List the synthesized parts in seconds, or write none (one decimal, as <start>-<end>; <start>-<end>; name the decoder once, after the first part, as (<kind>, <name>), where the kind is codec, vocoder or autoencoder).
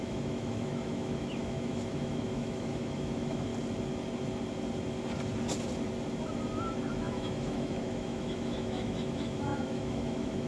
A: 0.0-3.5 (autoencoder, DAC-VAE); 7.0-10.5